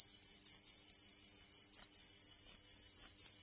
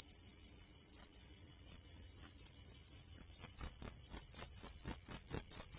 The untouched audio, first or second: first